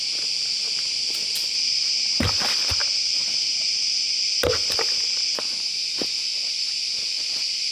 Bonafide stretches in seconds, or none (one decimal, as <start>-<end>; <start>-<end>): 0.0-1.3; 2.7-3.1; 3.7-7.7

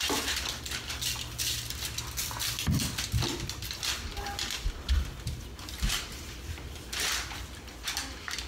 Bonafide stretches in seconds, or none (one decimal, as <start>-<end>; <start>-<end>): 0.0-8.5

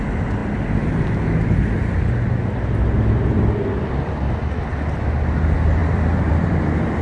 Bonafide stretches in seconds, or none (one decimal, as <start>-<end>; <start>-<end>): 0.0-5.8

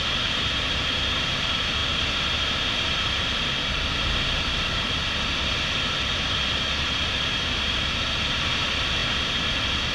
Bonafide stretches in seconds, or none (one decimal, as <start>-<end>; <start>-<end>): none